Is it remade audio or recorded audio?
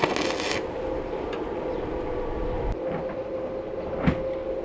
recorded